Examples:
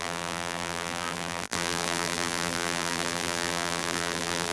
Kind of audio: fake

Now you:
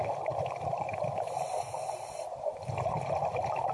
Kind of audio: fake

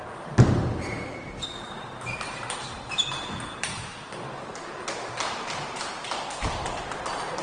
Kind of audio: fake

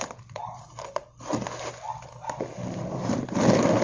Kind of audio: real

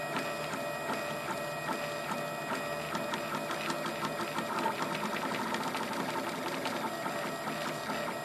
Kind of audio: real